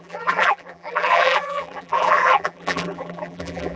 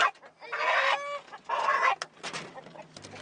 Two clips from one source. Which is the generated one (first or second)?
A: first